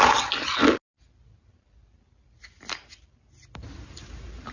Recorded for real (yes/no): yes